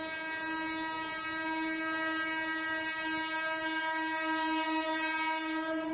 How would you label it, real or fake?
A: real